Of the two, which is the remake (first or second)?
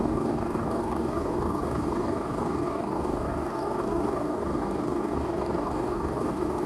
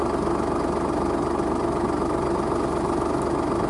first